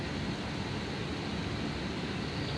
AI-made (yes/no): no